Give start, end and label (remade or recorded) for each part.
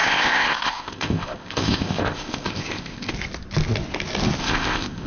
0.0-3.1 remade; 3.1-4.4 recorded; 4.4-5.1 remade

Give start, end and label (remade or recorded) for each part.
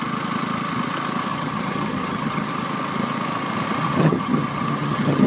0.0-1.3 recorded; 1.3-2.5 remade; 2.5-3.9 recorded; 3.9-5.3 remade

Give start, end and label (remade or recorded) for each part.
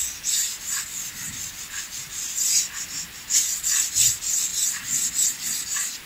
0.0-4.5 recorded; 4.5-6.1 remade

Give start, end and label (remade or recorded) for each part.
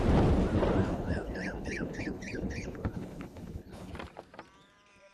0.0-0.8 recorded; 0.8-3.9 remade; 3.9-5.1 recorded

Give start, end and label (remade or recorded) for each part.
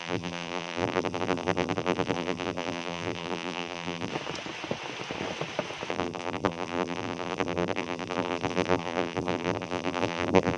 0.0-4.1 remade; 4.1-5.9 recorded; 5.9-10.6 remade